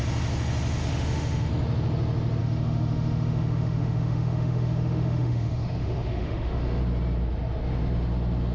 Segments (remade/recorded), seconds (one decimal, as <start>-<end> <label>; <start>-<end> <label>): 0.0-0.8 recorded; 0.8-1.5 remade; 1.5-2.4 recorded; 2.4-6.8 remade; 6.8-8.5 recorded